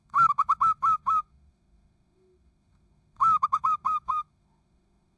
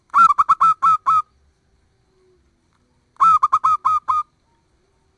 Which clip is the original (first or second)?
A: second